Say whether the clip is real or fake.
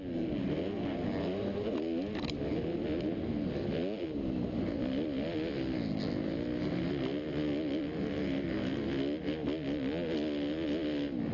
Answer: real